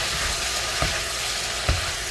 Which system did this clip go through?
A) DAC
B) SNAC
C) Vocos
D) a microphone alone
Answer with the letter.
D